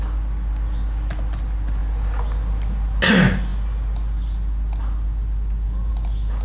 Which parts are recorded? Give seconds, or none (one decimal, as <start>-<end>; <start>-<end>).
0.0-6.4